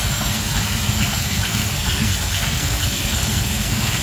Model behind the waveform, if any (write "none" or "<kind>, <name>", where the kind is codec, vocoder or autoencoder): codec, SNAC